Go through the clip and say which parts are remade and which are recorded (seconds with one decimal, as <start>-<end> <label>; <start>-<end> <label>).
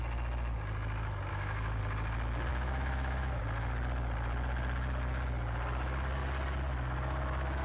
0.0-1.3 recorded; 1.3-1.8 remade; 1.8-2.5 recorded; 2.5-3.4 remade; 3.4-7.6 recorded